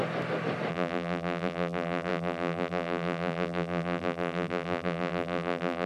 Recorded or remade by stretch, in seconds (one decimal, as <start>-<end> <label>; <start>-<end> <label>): 0.0-0.7 recorded; 0.7-5.9 remade